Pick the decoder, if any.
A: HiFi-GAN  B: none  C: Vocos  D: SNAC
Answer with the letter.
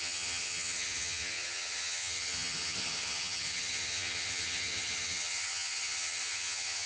A